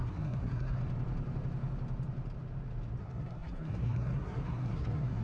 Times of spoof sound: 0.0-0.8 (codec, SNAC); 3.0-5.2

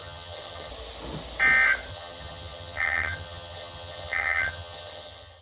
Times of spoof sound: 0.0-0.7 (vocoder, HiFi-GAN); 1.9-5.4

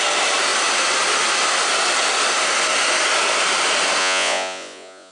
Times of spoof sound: 4.0-5.1 (vocoder, Vocos)